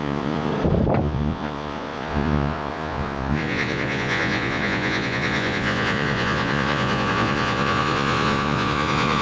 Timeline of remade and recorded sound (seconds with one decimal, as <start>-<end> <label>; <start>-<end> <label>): 0.0-0.5 remade; 0.5-1.0 recorded; 1.0-9.2 remade